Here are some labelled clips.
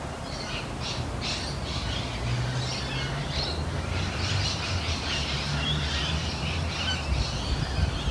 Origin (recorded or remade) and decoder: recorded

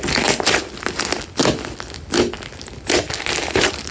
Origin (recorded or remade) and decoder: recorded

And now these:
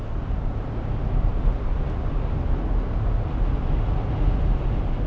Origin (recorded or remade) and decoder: recorded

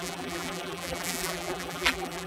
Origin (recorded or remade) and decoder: remade, vocoder, BigVGAN v2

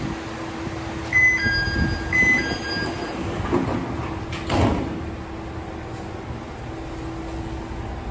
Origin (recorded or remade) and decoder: recorded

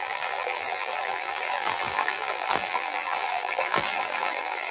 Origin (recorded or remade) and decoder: remade, vocoder, BigVGAN v2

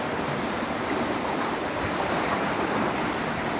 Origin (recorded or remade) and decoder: recorded